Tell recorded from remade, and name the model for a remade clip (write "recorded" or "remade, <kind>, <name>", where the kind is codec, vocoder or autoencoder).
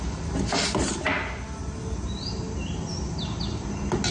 recorded